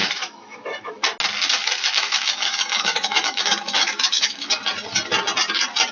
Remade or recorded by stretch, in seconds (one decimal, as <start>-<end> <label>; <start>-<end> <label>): 0.0-0.9 remade; 0.9-1.6 recorded; 1.6-4.5 remade; 4.5-5.9 recorded